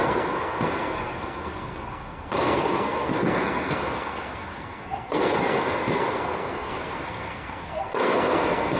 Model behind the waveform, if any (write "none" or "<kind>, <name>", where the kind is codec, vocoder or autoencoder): codec, SNAC